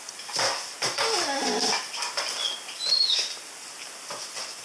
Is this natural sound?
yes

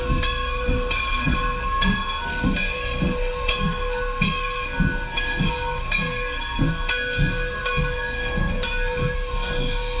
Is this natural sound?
no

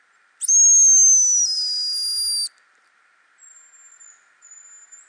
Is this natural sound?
yes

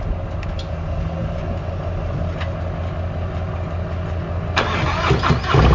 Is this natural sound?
yes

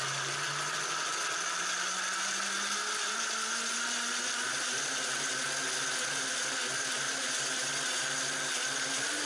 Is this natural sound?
yes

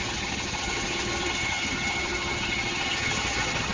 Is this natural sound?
no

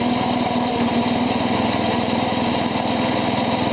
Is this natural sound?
yes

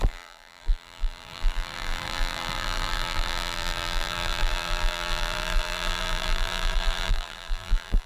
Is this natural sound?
no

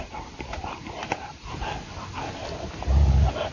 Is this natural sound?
yes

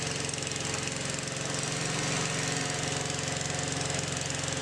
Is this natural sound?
yes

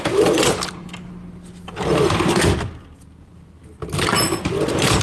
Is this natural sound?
yes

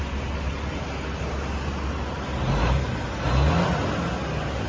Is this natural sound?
yes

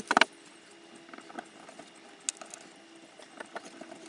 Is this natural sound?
yes